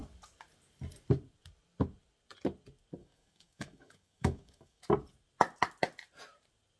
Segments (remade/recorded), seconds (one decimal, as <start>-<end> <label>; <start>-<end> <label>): 0.0-3.0 recorded; 3.0-4.8 remade; 4.8-6.8 recorded